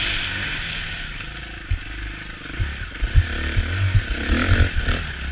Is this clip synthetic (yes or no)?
no